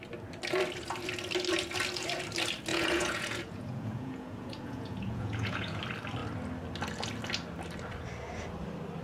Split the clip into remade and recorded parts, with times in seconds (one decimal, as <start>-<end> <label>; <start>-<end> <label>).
0.0-2.7 recorded; 2.7-5.8 remade; 5.8-9.0 recorded